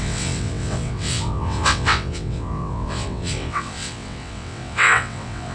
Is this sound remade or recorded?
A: remade